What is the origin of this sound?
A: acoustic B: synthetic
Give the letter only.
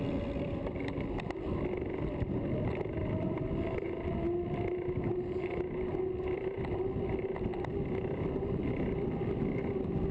A